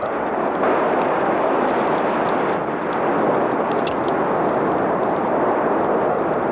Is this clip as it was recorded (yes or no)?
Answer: yes